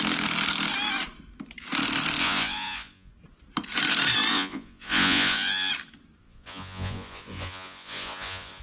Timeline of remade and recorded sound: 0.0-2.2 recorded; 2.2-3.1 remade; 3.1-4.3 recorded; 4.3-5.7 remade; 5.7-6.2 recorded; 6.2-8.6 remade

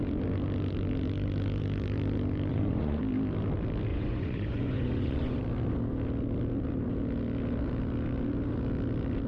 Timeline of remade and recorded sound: 0.0-2.5 recorded; 2.5-3.0 remade; 3.0-3.9 recorded; 3.9-5.4 remade; 5.4-9.3 recorded

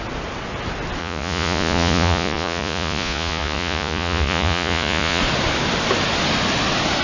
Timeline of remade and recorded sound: 0.0-1.0 recorded; 1.0-5.2 remade; 5.2-7.0 recorded

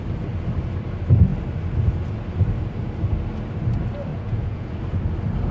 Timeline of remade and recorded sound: 0.0-4.1 recorded; 4.1-4.8 remade; 4.8-5.5 recorded

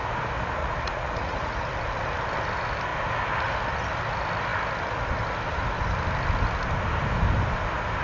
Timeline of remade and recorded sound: 0.0-0.6 recorded; 0.6-1.6 remade; 1.6-8.0 recorded

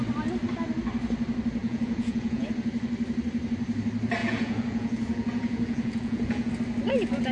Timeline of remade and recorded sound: 0.0-1.6 recorded; 1.6-2.5 remade; 2.5-4.2 recorded; 4.2-6.5 remade; 6.5-7.3 recorded